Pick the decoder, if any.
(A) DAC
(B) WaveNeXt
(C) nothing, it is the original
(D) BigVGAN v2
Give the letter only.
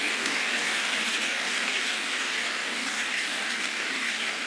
A